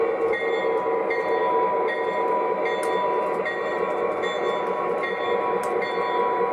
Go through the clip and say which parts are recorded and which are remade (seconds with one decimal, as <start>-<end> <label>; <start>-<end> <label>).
0.0-6.5 recorded

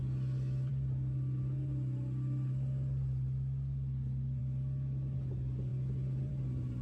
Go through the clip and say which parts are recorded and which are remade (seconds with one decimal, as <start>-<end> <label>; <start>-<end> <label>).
0.0-6.8 recorded

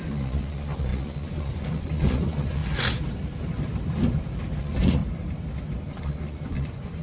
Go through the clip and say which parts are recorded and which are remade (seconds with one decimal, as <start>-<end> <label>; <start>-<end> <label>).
0.0-2.6 remade; 2.6-4.6 recorded; 4.6-5.0 remade; 5.0-5.9 recorded; 5.9-7.0 remade